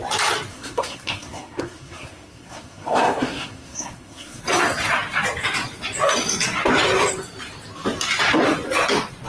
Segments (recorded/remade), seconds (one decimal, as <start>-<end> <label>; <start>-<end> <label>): 0.0-0.5 recorded; 0.5-4.4 remade; 4.4-9.3 recorded